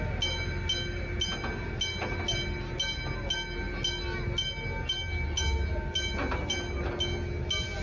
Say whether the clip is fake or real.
real